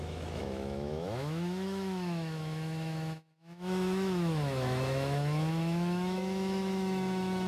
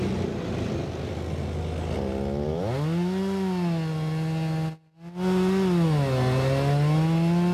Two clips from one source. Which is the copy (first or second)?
first